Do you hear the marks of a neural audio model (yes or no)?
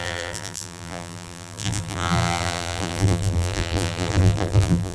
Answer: yes